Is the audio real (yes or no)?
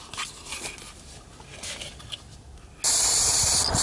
yes